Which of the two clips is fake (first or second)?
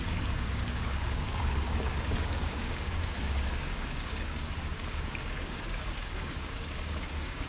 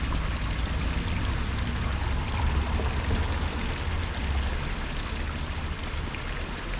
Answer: first